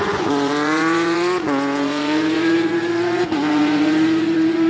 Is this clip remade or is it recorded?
remade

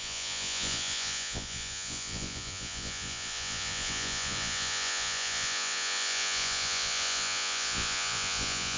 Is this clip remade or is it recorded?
remade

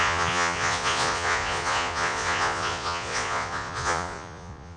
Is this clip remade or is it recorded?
remade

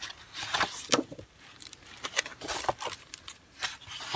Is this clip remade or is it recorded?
remade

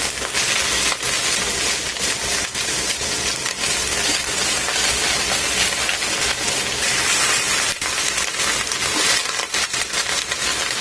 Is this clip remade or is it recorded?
recorded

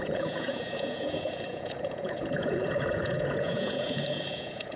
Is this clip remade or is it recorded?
remade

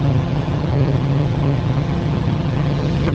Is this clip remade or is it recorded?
remade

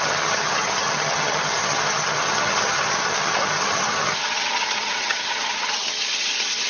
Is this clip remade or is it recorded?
remade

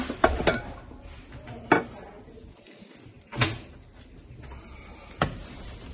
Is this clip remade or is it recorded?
recorded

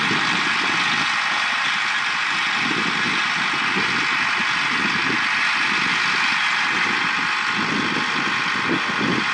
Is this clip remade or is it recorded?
recorded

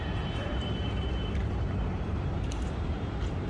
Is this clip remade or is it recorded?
remade